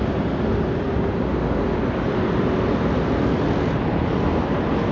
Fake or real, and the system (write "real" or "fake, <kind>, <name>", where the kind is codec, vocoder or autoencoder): real